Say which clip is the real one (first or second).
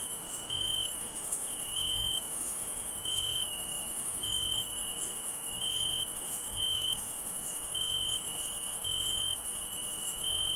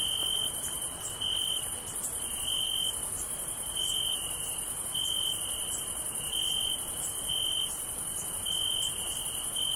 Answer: second